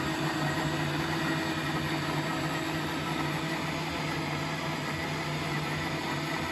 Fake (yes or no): no